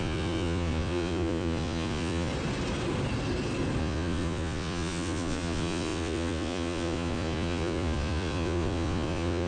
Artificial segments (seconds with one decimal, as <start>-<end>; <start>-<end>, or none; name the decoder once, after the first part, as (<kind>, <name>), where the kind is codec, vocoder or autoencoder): 0.0-2.3 (vocoder, Vocos); 3.8-9.5